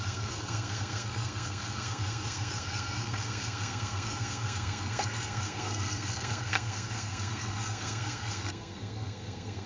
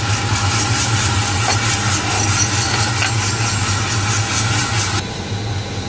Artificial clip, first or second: first